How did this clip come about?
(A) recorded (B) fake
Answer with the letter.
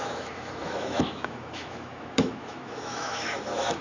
B